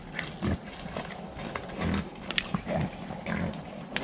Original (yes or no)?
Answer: yes